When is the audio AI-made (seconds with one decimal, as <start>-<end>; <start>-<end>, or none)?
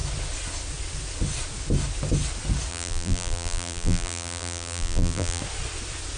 2.7-5.4